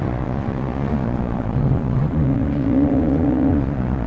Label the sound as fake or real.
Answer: fake